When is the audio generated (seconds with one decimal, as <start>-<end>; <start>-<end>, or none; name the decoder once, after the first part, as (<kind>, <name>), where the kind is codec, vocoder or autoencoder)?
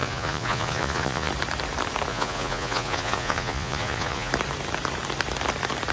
0.0-1.3 (vocoder, Vocos); 2.1-4.3